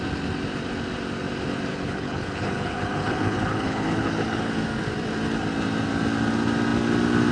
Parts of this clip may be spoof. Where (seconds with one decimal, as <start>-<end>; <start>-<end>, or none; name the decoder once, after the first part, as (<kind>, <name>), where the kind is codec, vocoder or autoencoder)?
1.7-4.5 (codec, HILCodec)